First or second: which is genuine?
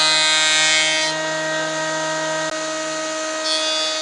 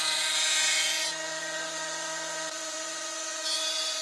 first